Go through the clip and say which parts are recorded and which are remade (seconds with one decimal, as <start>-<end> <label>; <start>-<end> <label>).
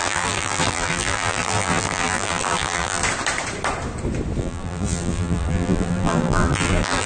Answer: 0.0-3.0 remade; 3.0-4.4 recorded; 4.4-7.1 remade